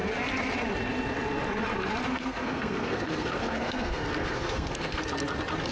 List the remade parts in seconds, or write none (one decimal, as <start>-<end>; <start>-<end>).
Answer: 2.1-5.0